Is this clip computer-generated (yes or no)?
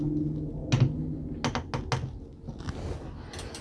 no